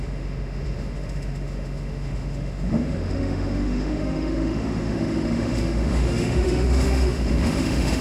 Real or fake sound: fake